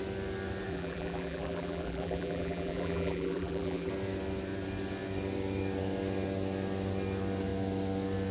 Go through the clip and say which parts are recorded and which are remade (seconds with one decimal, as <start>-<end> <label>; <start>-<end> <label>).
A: 0.0-0.7 recorded; 0.7-3.9 remade; 3.9-8.3 recorded